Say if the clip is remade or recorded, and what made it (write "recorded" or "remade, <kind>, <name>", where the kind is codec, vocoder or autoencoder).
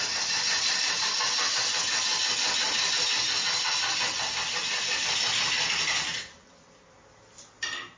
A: recorded